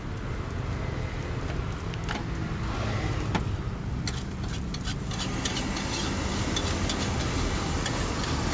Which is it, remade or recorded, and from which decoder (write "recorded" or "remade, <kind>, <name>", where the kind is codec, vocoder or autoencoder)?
recorded